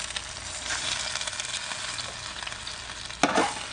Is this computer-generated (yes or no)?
no